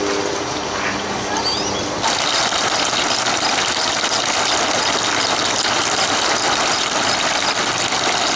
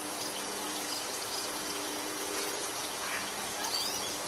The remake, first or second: second